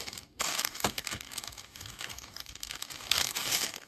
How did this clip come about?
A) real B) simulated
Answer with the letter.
B